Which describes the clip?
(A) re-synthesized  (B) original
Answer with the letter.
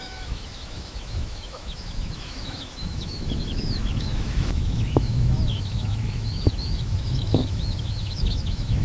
A